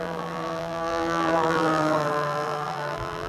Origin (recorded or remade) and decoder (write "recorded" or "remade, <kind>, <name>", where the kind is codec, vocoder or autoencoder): remade, vocoder, BigVGAN v2